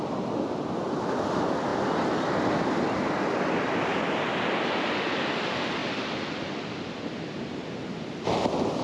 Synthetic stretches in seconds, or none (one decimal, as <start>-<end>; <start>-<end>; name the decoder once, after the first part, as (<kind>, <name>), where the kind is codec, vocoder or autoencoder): none